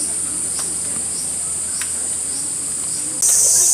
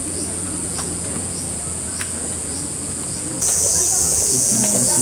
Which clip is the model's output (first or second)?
second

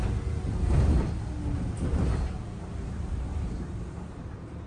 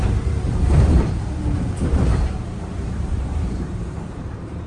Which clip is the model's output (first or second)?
second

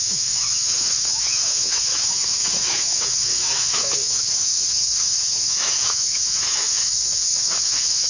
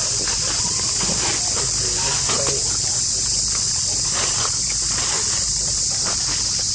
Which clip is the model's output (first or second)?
first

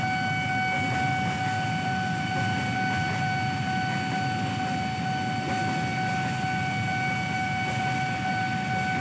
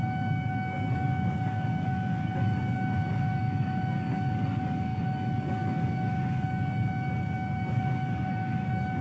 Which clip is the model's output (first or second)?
second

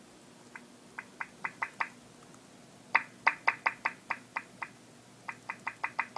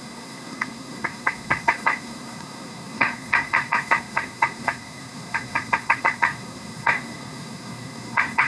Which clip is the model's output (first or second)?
second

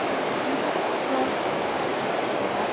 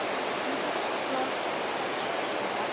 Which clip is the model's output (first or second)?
first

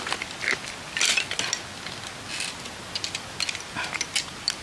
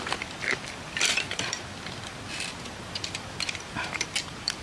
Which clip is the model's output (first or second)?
second